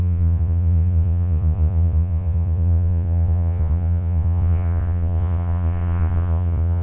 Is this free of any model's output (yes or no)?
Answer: no